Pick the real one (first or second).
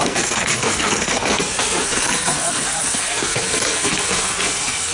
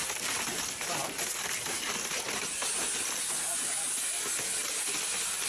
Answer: second